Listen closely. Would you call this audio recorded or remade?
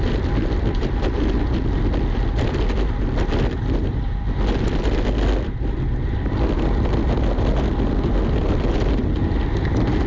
recorded